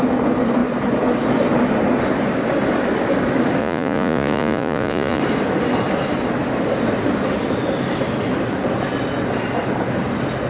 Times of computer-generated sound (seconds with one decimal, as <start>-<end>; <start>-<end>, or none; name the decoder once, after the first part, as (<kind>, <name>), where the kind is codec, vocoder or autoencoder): 3.6-5.2 (vocoder, Vocos)